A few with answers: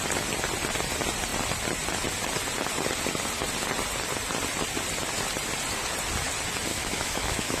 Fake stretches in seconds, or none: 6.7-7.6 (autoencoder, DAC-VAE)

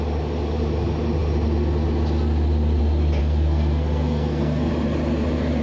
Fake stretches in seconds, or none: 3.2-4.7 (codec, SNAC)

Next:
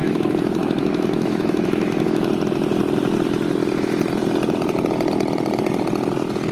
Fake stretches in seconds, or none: 0.0-2.3 (autoencoder, DAC-VAE)

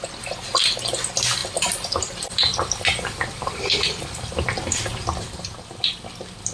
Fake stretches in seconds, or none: none

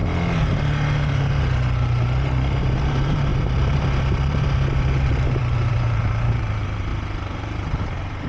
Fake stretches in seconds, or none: 2.6-6.9 (vocoder, BigVGAN v2); 7.4-8.3